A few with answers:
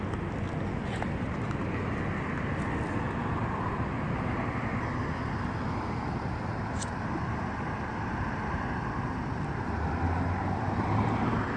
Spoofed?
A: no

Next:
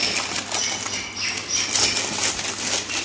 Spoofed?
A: no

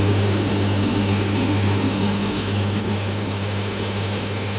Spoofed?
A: yes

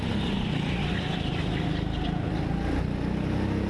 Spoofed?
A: no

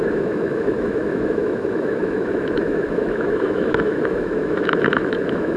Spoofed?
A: yes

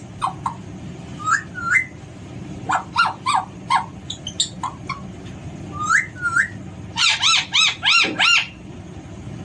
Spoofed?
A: no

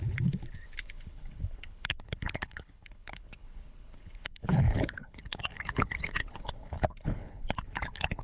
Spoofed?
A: yes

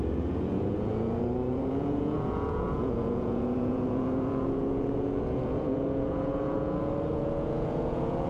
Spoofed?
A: yes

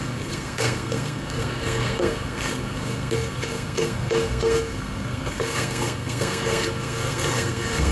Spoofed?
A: yes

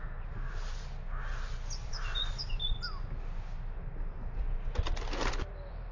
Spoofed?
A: no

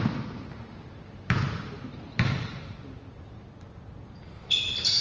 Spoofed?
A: yes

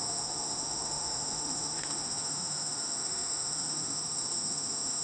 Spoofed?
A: yes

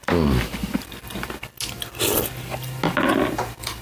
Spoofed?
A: no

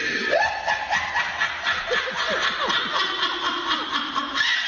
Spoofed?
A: no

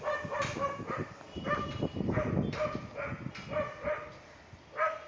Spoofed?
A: no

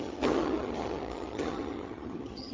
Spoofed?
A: yes